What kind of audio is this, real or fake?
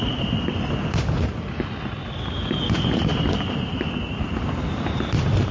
real